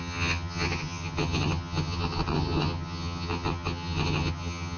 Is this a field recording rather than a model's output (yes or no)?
no